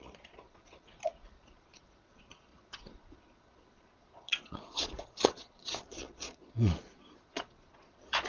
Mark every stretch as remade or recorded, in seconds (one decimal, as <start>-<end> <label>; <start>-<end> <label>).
0.0-8.3 remade